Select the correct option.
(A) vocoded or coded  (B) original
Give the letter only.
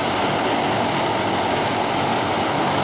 B